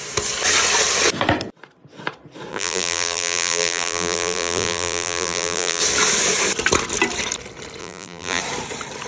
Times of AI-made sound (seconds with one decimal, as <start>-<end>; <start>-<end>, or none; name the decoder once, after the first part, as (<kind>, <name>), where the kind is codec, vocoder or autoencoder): 2.5-5.8 (vocoder, BigVGAN v2); 7.8-8.4

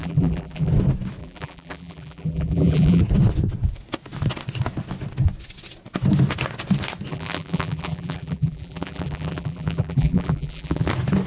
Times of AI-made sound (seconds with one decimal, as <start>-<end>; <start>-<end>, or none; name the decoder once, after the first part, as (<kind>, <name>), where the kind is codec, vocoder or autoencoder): 0.0-0.7 (vocoder, BigVGAN v2); 1.2-3.0; 7.1-10.9

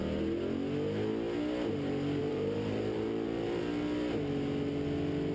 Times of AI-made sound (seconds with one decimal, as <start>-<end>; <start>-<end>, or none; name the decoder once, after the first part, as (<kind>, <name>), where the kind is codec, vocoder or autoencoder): 2.2-3.6 (vocoder, BigVGAN v2)

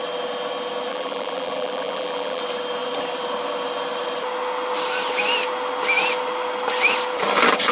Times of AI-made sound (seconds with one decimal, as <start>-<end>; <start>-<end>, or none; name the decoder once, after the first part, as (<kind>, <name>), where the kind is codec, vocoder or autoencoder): 0.9-2.4 (vocoder, BigVGAN v2)

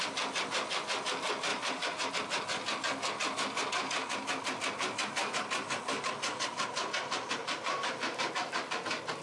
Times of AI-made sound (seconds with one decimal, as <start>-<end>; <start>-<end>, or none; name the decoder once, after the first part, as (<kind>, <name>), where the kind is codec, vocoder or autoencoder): 1.5-2.1 (vocoder, BigVGAN v2); 7.4-8.3